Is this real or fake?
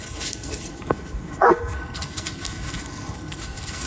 fake